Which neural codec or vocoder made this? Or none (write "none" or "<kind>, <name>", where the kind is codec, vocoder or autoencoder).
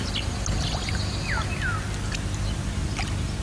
none